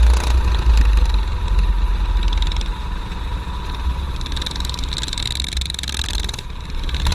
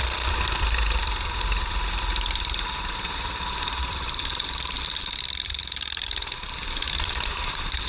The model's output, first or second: second